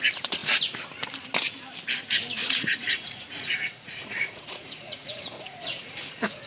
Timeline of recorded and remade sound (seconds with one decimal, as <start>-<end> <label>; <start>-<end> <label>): 0.0-2.4 recorded; 2.4-6.5 remade